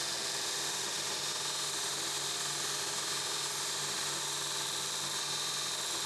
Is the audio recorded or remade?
recorded